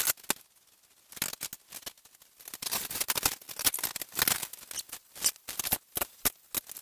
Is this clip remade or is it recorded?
recorded